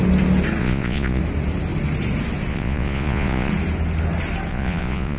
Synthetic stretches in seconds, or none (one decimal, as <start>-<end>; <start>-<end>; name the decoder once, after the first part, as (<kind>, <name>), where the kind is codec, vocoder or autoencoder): 0.6-1.2 (vocoder, Vocos); 2.5-3.5; 4.5-5.2